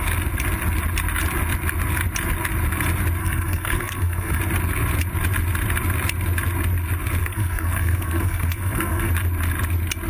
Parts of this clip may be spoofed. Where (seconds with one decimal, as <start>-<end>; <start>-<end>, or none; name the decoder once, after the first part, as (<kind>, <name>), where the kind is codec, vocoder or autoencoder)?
3.2-4.4 (codec, SNAC); 7.2-9.1